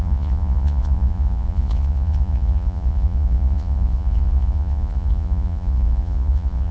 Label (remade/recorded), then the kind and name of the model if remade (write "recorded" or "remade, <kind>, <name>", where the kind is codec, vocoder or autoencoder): remade, vocoder, Vocos